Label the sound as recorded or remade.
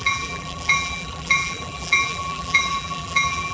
remade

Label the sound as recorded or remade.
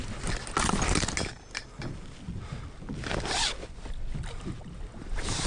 recorded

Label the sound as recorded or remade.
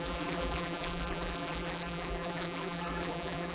remade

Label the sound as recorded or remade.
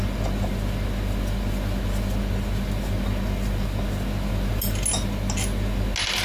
recorded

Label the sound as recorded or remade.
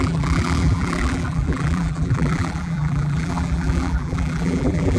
remade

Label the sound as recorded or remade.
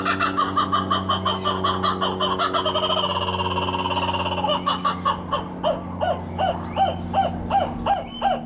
recorded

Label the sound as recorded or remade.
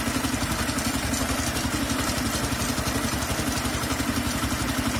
recorded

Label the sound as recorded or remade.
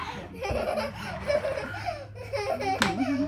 recorded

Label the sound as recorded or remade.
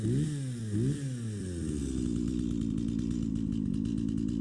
recorded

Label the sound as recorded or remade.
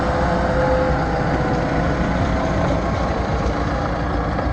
recorded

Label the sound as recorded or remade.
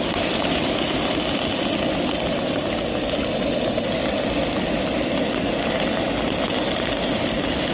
recorded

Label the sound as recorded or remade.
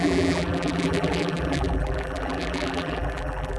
remade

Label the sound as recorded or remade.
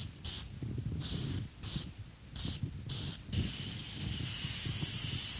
recorded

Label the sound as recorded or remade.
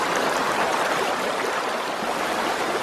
remade